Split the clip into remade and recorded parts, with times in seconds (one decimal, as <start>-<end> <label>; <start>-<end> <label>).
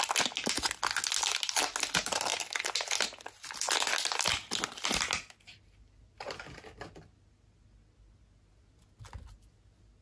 0.0-10.0 recorded